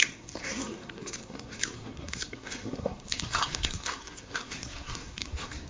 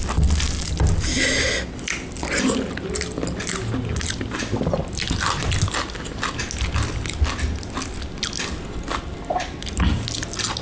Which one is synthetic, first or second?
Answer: first